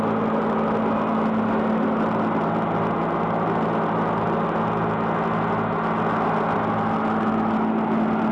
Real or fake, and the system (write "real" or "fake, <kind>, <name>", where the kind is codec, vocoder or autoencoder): real